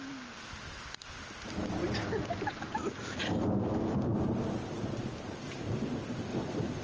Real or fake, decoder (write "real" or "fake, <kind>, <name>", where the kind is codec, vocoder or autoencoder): real